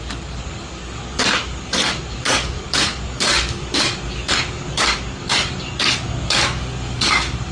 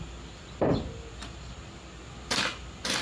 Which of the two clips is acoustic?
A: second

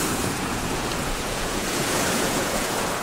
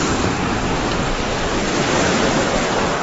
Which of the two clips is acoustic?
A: second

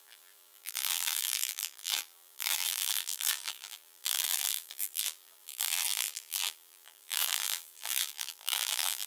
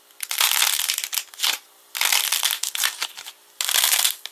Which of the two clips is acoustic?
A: second